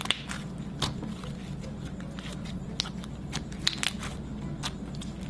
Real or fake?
real